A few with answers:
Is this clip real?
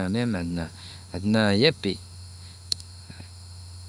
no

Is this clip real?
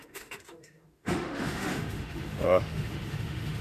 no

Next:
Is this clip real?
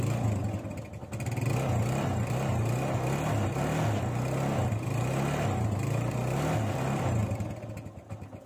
yes